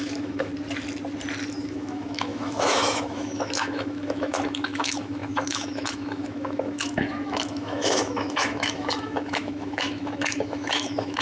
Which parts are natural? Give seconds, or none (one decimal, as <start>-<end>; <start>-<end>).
0.5-1.6